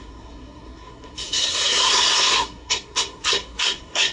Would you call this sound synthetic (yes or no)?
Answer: yes